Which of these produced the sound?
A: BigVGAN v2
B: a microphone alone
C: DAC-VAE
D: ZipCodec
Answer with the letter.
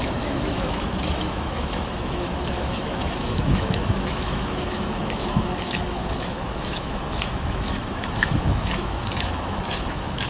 C